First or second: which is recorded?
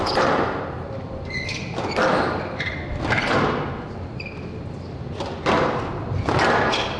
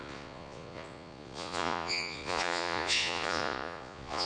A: first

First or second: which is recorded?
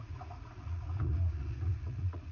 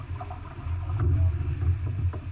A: second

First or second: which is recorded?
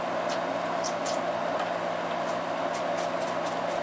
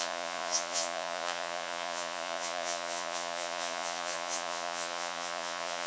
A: first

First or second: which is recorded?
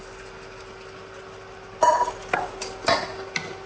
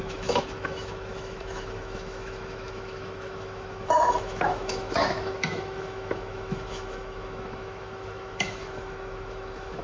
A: first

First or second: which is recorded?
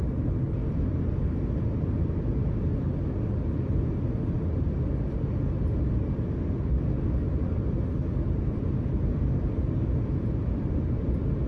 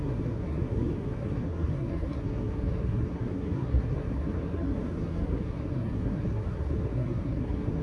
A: first